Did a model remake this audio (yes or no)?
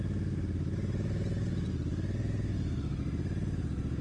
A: no